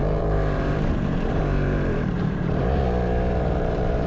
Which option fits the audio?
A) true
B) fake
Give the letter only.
B